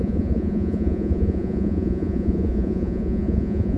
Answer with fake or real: fake